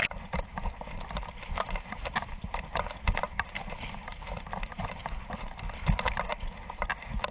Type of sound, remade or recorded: recorded